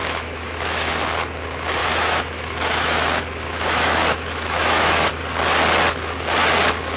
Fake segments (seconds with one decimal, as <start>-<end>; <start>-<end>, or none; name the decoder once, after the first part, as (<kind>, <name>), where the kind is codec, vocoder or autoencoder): 0.0-0.9 (autoencoder, DAC-VAE); 1.8-5.1